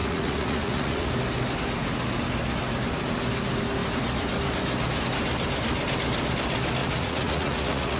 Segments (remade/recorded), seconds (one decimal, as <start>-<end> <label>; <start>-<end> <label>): 0.0-1.1 remade; 1.1-6.8 recorded; 6.8-8.0 remade